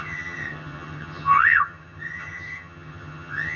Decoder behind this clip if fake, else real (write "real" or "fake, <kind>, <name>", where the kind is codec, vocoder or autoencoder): fake, vocoder, HiFi-GAN